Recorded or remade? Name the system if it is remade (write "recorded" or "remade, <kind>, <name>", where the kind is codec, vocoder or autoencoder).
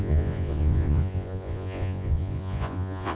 remade, vocoder, Vocos